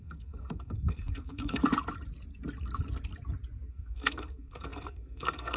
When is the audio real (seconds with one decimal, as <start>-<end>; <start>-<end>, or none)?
1.6-3.7